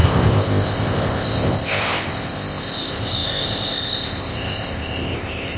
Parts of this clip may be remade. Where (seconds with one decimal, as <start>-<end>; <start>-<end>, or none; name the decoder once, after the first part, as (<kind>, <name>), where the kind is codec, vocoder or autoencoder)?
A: 0.0-5.6 (codec, ZipCodec)